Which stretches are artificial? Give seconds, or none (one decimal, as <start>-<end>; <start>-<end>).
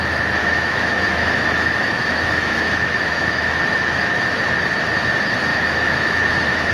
0.4-4.4; 5.5-6.3